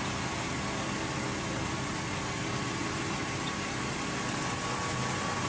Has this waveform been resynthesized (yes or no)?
no